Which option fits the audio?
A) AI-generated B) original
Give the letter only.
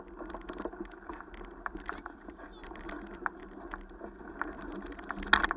B